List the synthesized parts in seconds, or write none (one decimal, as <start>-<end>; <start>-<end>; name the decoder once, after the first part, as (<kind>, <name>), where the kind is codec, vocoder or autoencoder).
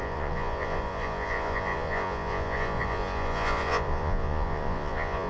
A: 0.0-5.3 (vocoder, Vocos)